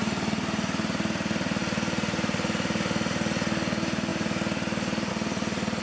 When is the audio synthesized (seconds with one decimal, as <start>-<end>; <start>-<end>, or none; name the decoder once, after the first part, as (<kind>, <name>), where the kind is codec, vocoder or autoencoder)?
none